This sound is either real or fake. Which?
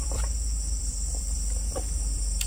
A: fake